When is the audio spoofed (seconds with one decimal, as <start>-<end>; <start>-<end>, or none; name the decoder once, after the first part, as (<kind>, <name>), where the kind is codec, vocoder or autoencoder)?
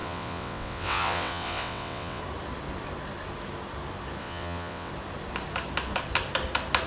0.0-2.2 (vocoder, WaveNeXt); 4.2-4.9